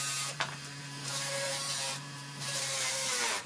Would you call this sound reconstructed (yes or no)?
yes